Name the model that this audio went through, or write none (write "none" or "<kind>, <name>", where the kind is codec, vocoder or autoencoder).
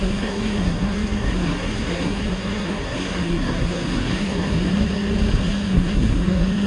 codec, SNAC